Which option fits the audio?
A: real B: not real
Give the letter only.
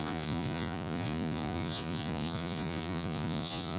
B